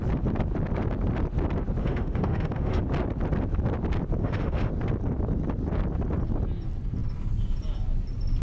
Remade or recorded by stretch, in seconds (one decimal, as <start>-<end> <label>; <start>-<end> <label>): 0.0-1.8 recorded; 1.8-2.8 remade; 2.8-4.2 recorded; 4.2-4.7 remade; 4.7-8.4 recorded